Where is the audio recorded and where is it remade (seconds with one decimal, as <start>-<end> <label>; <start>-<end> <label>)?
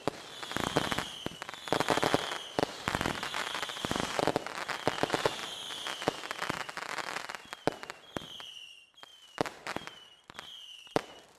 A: 0.0-2.6 recorded; 2.6-4.2 remade; 4.2-9.1 recorded; 9.1-11.0 remade; 11.0-11.4 recorded